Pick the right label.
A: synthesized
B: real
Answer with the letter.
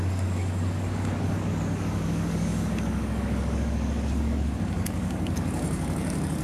A